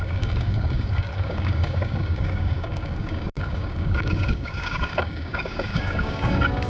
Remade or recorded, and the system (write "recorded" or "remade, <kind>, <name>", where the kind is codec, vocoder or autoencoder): remade, codec, DAC